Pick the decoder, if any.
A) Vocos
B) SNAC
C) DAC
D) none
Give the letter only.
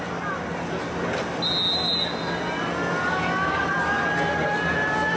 D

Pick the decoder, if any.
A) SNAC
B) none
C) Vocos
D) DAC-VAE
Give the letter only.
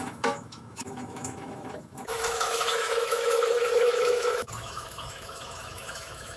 D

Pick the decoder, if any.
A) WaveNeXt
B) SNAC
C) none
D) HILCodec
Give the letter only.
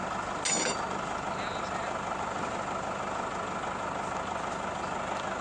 C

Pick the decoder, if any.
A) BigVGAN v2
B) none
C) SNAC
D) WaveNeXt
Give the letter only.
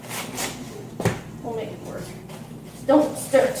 B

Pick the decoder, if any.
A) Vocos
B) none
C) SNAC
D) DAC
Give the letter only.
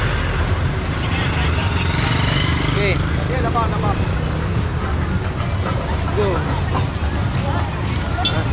B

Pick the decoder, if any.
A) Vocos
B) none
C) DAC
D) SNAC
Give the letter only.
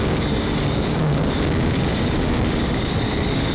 C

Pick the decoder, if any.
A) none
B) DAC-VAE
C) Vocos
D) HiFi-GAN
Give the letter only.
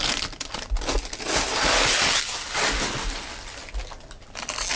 A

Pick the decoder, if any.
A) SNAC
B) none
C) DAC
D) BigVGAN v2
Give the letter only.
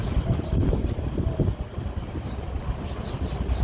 B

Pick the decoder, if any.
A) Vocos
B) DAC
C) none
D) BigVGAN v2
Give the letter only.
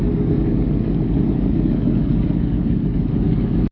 B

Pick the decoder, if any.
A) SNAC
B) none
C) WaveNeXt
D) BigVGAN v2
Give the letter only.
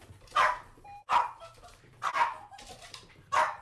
D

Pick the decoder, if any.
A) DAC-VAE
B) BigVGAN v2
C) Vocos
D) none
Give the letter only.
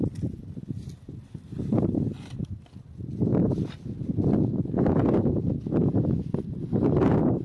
D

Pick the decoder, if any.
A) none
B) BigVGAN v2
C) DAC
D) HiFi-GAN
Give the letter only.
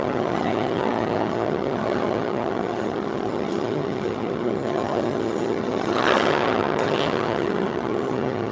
D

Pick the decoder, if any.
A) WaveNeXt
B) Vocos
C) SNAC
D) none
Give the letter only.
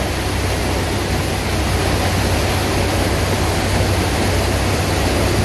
D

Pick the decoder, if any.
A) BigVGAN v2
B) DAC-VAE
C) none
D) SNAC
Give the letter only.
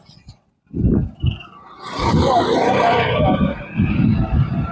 C